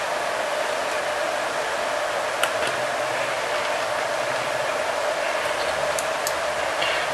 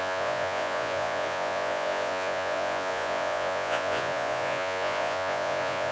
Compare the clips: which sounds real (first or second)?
first